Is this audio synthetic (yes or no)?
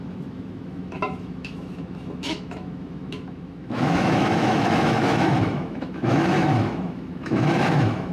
yes